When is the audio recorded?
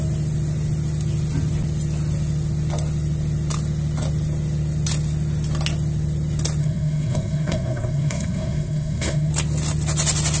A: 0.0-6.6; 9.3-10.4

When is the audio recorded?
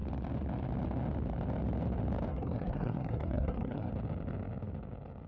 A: 0.0-2.3; 3.9-5.3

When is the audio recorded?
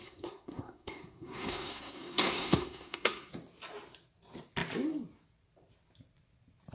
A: 3.3-6.7